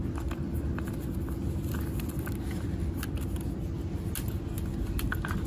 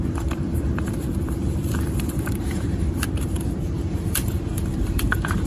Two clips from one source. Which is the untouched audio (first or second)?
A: first